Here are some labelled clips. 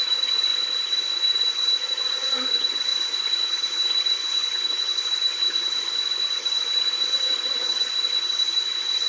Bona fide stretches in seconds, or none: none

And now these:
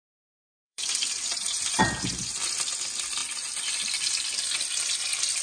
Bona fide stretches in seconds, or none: 0.0-0.5; 1.8-5.4

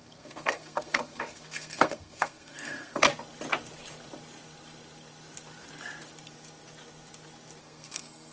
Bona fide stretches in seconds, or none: 3.1-7.6

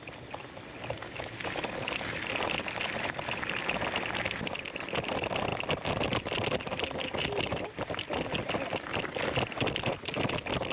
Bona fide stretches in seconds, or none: 0.0-10.7

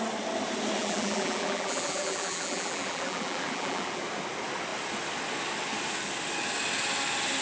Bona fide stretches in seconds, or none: 0.0-0.8; 4.0-7.4

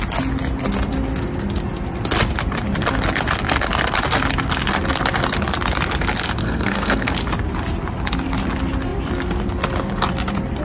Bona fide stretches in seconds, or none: 0.0-6.4; 7.1-10.6

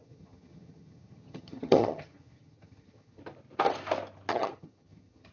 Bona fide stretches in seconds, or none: 3.2-4.3